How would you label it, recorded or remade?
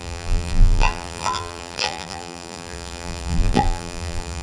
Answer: remade